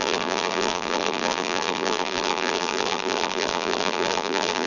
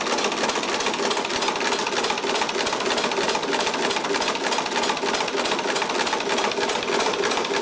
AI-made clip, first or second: first